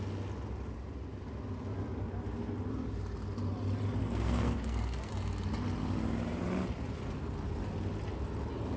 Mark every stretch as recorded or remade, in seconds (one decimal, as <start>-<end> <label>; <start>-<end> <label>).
0.0-4.0 recorded; 4.0-5.1 remade; 5.1-8.8 recorded